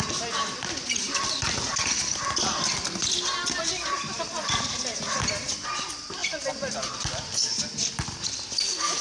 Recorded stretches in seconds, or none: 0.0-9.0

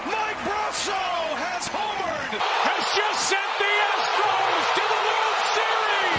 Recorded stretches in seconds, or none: 0.0-1.0; 2.8-4.1; 5.2-6.2

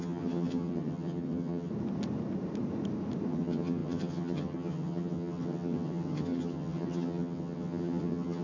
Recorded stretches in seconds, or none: 1.7-3.3

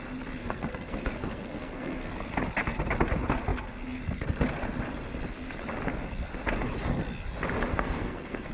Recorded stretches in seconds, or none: 0.0-0.4; 2.1-7.7